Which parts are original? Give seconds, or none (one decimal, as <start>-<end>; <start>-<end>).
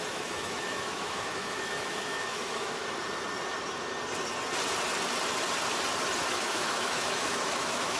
2.8-6.3